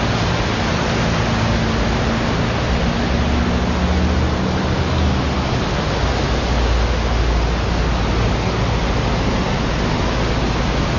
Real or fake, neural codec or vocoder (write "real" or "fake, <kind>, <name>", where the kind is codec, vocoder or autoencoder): real